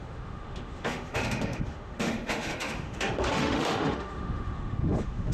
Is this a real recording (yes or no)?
no